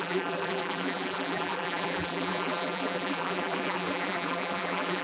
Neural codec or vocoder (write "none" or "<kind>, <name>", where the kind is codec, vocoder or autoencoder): vocoder, BigVGAN v2